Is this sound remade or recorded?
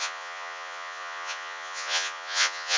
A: remade